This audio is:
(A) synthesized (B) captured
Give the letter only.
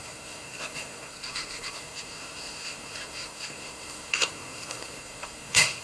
A